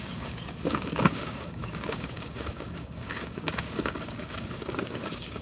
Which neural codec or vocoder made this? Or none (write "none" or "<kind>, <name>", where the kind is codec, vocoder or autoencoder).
codec, DAC